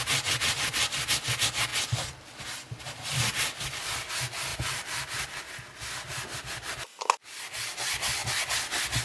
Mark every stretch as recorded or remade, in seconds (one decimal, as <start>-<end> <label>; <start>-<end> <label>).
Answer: 0.0-4.5 recorded; 4.5-5.6 remade; 5.6-6.1 recorded; 6.1-6.7 remade; 6.7-9.0 recorded